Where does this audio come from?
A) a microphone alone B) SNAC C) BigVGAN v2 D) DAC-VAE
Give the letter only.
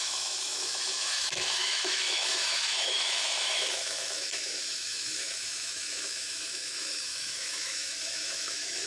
D